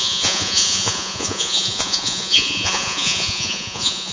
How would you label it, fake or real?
fake